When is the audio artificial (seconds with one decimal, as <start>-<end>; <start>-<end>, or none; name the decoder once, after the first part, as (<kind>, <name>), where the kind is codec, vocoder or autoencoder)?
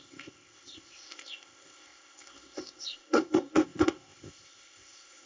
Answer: 0.0-5.3 (codec, ZipCodec)